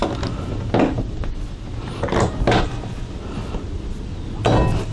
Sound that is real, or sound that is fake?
real